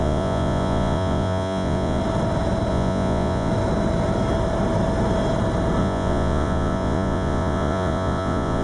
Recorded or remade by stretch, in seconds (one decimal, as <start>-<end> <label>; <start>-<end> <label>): 0.0-2.0 remade; 2.0-2.7 recorded; 2.7-3.5 remade; 3.5-5.8 recorded; 5.8-8.6 remade